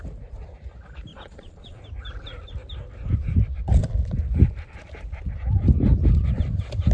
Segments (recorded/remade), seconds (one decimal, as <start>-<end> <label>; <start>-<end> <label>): 0.0-1.1 recorded; 1.1-1.8 remade; 1.8-6.9 recorded

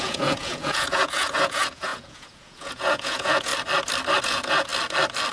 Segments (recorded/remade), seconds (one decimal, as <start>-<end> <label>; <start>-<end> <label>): 0.0-3.5 remade; 3.5-4.2 recorded; 4.2-4.7 remade; 4.7-5.3 recorded

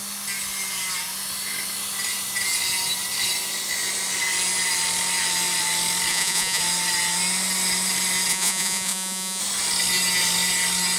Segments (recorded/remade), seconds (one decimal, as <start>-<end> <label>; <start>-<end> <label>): 0.0-6.1 recorded; 6.1-6.6 remade; 6.6-8.3 recorded; 8.3-9.4 remade; 9.4-11.0 recorded

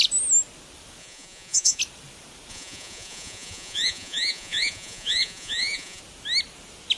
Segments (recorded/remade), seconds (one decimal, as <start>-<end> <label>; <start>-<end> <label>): 0.0-1.0 recorded; 1.0-1.8 remade; 1.8-2.5 recorded; 2.5-6.0 remade; 6.0-7.0 recorded